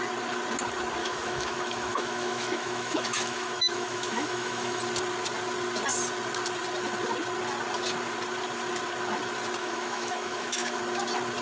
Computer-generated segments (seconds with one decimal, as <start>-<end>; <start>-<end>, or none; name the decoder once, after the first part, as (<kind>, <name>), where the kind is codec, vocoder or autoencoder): 1.0-4.8 (autoencoder, DAC-VAE); 9.6-10.8